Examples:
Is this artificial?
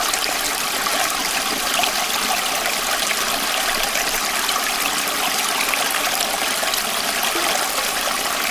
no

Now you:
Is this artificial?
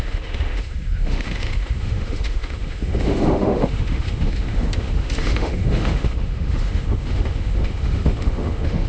yes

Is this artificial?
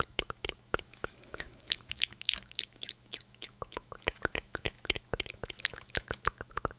yes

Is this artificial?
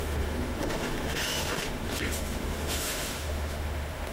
yes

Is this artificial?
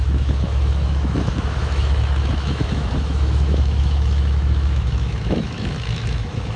yes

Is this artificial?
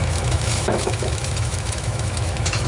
yes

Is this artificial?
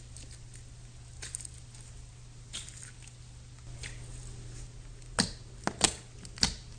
no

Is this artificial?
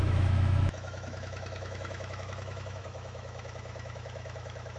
yes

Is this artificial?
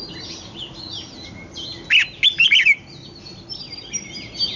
no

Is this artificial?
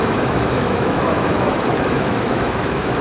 yes